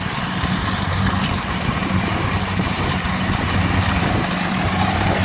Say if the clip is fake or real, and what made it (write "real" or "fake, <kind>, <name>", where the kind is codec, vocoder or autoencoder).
fake, vocoder, BigVGAN v2